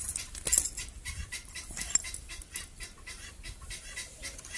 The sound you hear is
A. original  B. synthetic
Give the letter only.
A